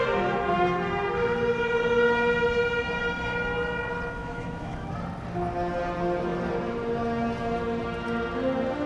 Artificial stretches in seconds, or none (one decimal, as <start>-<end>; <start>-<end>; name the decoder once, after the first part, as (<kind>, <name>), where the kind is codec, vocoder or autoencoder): 4.2-4.9 (autoencoder, DAC-VAE)